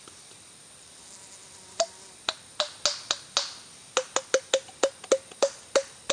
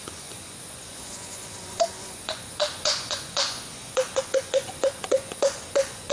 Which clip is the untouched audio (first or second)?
first